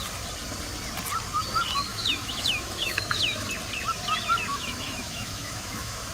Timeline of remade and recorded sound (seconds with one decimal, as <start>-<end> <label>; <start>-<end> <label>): 0.0-1.9 recorded; 1.9-3.5 remade; 3.5-4.5 recorded; 4.5-6.1 remade